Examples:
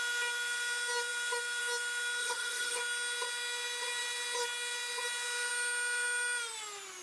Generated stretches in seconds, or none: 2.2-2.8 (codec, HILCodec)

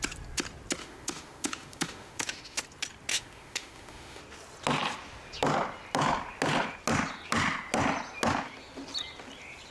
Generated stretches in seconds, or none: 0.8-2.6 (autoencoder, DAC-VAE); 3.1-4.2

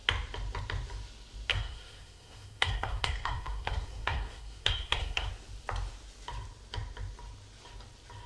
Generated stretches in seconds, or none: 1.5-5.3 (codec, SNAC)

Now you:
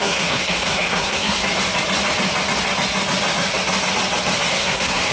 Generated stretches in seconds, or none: 0.0-1.4 (codec, SNAC); 4.5-5.1

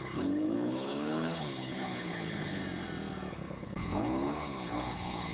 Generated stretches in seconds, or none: 0.0-2.6 (codec, HILCodec); 3.3-5.3

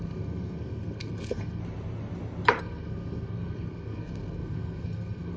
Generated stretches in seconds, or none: 0.0-1.6 (codec, SNAC); 2.6-5.4

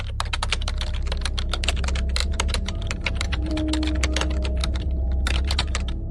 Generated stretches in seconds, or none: 2.2-3.5 (vocoder, BigVGAN v2); 4.6-6.1

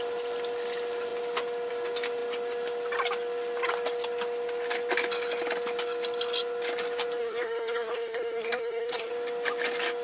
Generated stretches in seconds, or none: 7.2-9.1 (codec, SNAC)